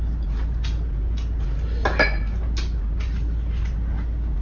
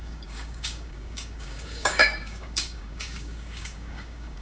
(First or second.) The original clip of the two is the first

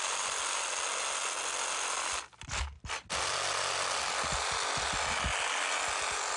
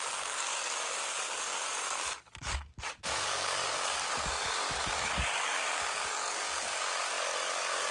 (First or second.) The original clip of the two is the first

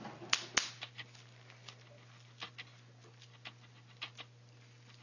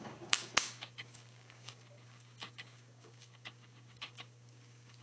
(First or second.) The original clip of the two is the first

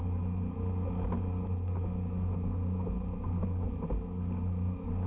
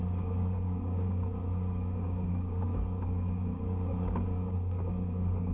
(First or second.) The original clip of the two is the first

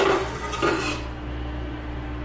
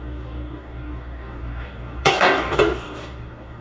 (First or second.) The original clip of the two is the first